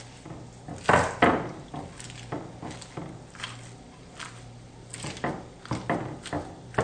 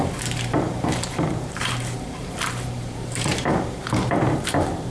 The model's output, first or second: second